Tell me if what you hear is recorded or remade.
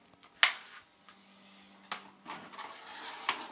recorded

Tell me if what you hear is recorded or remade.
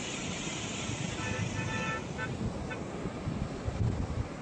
recorded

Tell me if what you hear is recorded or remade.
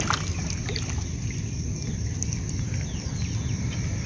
recorded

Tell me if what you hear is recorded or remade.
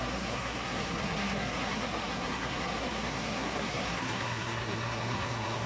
remade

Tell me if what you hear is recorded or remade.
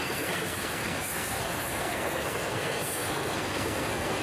remade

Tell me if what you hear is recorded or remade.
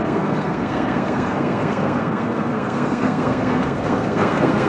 remade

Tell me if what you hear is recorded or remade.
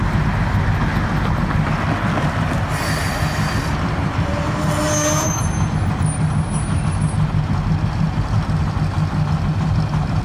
recorded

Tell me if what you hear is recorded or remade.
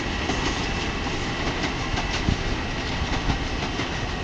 recorded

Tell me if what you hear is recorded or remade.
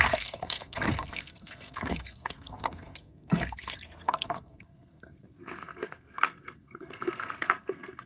remade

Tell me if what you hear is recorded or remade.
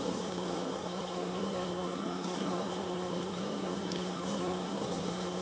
remade